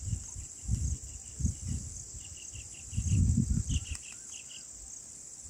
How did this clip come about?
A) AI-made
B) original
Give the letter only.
B